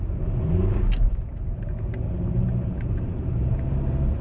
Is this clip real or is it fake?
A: real